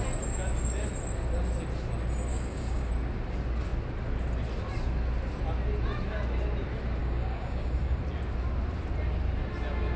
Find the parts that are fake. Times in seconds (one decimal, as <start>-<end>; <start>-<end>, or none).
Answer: 2.3-2.9; 7.0-8.0